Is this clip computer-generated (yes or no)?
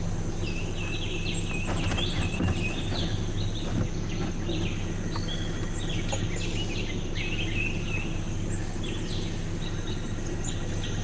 no